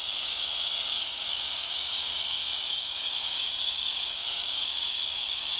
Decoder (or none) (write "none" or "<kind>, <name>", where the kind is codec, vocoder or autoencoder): codec, DAC